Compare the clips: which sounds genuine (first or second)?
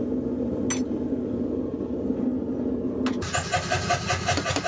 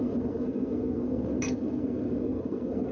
first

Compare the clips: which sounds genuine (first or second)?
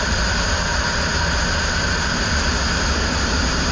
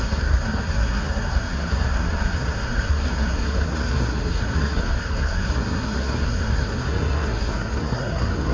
first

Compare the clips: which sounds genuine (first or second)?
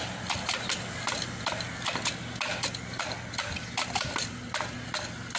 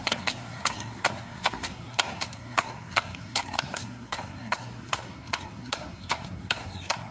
first